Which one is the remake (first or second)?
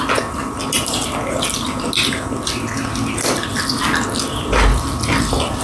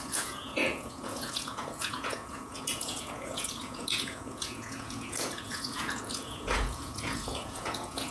second